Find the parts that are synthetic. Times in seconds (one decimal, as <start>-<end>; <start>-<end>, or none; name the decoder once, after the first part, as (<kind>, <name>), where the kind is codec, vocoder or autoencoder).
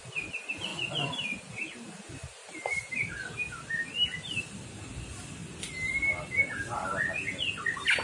0.7-1.4 (vocoder, Vocos)